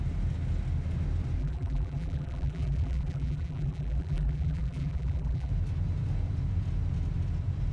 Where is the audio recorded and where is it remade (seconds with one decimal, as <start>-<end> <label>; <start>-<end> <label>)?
0.0-1.4 recorded; 1.4-5.5 remade; 5.5-7.7 recorded